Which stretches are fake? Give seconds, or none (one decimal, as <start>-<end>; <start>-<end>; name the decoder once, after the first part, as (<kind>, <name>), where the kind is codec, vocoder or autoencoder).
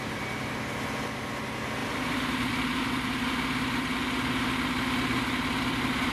none